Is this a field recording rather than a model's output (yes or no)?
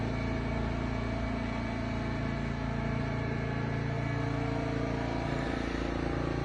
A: yes